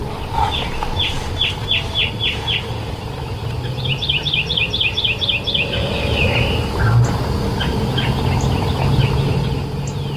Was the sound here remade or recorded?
recorded